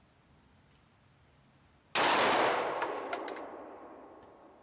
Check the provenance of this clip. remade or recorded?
recorded